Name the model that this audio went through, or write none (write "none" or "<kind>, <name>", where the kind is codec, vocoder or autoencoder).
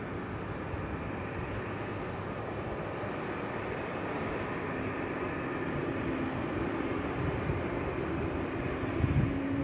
none